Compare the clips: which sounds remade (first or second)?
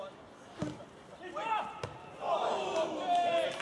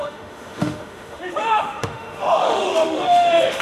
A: second